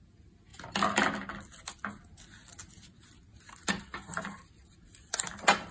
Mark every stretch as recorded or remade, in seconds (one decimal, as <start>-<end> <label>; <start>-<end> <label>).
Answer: 0.0-5.7 recorded